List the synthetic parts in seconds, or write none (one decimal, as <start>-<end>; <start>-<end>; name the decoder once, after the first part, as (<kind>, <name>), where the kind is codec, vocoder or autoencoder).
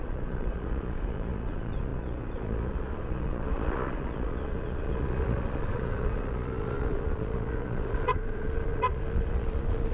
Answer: 0.0-9.9 (vocoder, Vocos)